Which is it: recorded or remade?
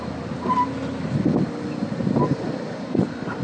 recorded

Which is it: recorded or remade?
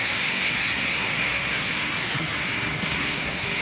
remade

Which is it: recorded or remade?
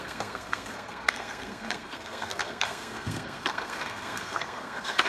remade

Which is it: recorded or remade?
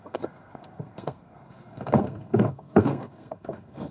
remade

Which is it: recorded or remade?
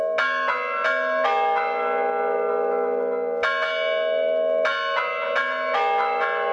recorded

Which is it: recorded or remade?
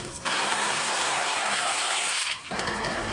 remade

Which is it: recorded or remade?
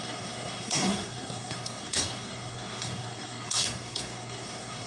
remade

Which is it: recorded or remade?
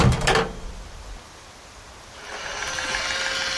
recorded